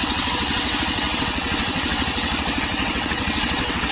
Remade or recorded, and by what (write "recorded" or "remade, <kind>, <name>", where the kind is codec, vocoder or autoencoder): remade, vocoder, WaveNeXt